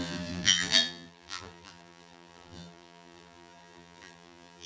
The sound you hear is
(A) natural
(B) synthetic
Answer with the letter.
B